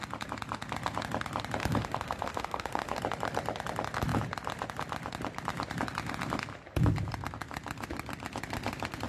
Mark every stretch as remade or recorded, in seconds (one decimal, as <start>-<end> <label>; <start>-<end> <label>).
0.0-1.6 recorded; 1.6-3.0 remade; 3.0-9.1 recorded